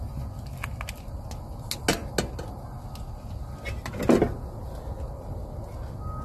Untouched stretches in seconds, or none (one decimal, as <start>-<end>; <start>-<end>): 0.0-6.2